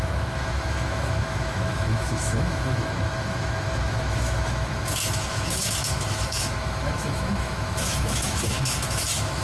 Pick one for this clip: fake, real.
fake